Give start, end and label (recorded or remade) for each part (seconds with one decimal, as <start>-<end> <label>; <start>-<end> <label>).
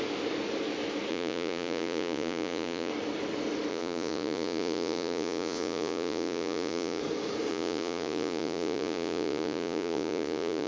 0.0-1.1 recorded; 1.1-2.9 remade; 2.9-3.7 recorded; 3.7-7.0 remade; 7.0-7.5 recorded; 7.5-10.7 remade